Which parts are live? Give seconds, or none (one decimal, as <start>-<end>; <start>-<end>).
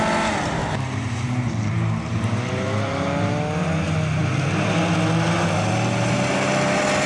0.0-0.6; 3.3-7.1